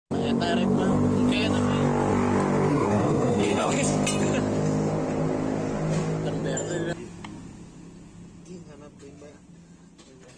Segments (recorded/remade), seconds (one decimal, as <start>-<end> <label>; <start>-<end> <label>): 0.0-2.7 recorded; 2.7-3.7 remade; 3.7-10.4 recorded